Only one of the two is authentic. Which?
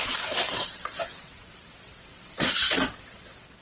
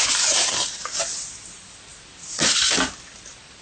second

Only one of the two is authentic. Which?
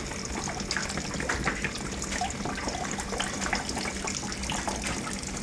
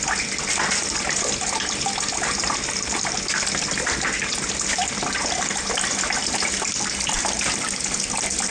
first